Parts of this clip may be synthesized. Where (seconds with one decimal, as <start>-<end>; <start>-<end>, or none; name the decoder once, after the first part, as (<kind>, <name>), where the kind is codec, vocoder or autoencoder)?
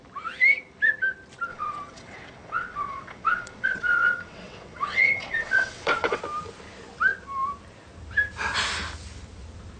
1.5-6.2 (vocoder, WaveNeXt)